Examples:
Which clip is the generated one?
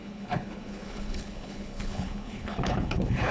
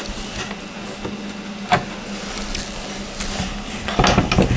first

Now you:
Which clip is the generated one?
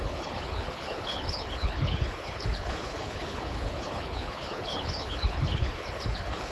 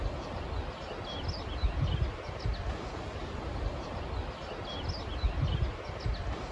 first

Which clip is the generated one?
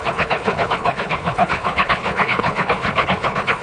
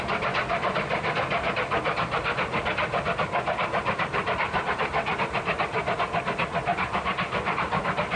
first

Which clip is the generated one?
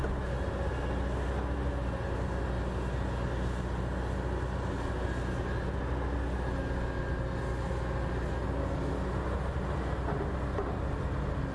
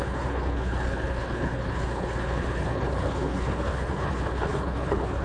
second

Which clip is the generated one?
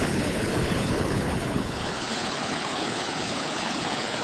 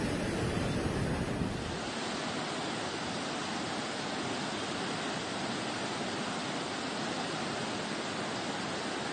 first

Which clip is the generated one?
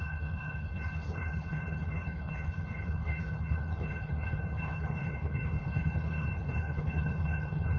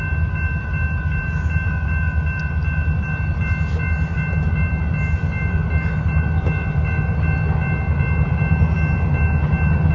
first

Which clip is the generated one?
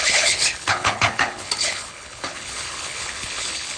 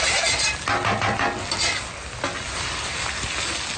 first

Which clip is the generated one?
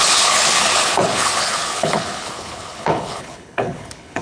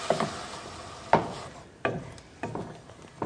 first